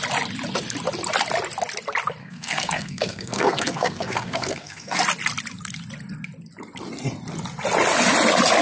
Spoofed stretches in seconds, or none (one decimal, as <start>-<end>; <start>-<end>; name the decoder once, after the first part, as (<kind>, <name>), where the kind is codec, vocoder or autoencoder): 2.2-5.0 (codec, SNAC)